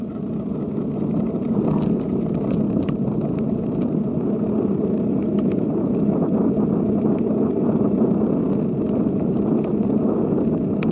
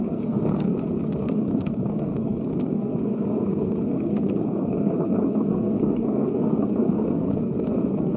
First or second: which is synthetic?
second